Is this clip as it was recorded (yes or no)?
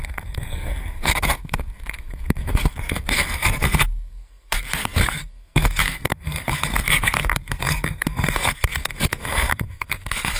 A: no